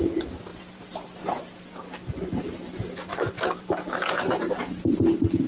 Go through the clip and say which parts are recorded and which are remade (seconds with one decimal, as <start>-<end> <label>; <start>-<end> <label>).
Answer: 0.0-0.5 recorded; 0.5-1.7 remade; 1.7-3.1 recorded; 3.1-4.1 remade; 4.1-5.5 recorded